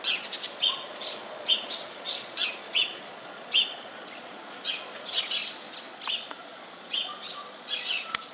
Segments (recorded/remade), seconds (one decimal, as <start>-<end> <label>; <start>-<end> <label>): 0.0-5.4 remade; 5.4-6.3 recorded; 6.3-8.3 remade

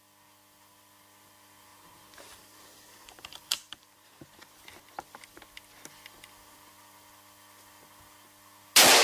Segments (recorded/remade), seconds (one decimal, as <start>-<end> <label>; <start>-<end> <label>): 0.0-1.7 recorded; 1.7-4.9 remade; 4.9-9.0 recorded

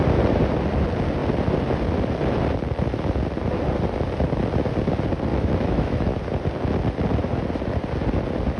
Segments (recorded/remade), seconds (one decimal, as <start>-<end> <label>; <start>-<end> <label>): 0.0-5.3 recorded; 5.3-6.1 remade; 6.1-8.6 recorded

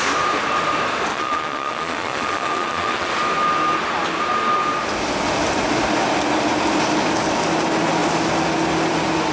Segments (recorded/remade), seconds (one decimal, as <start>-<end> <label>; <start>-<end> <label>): 0.0-1.1 recorded; 1.1-3.1 remade; 3.1-9.3 recorded

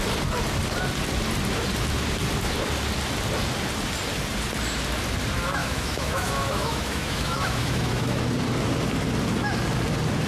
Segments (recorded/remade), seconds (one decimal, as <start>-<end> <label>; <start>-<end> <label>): 0.0-5.6 recorded; 5.6-8.2 remade; 8.2-10.3 recorded

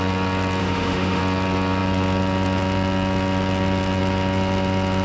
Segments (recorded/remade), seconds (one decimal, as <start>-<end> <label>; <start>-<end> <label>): 0.0-0.6 recorded; 0.6-1.2 remade; 1.2-5.0 recorded

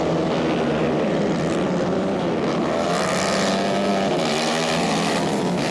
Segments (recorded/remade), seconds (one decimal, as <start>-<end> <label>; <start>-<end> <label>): 0.0-0.8 recorded; 0.8-2.3 remade; 2.3-5.7 recorded